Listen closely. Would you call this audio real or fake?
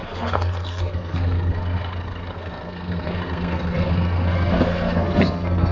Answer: fake